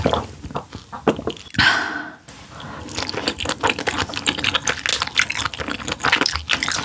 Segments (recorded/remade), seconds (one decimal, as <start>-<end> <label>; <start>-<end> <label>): 0.0-6.8 recorded